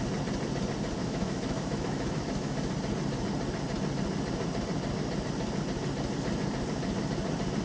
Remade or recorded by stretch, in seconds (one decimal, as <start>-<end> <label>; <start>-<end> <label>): 0.0-1.0 recorded; 1.0-2.7 remade; 2.7-7.6 recorded